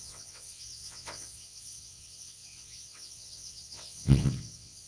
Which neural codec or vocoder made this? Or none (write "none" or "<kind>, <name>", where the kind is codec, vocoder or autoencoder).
vocoder, WaveNeXt